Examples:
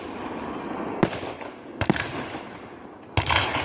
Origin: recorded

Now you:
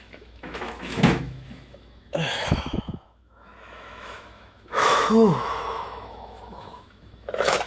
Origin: remade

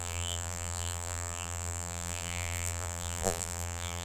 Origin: remade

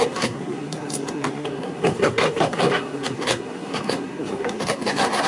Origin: remade